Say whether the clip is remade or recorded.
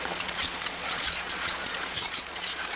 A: remade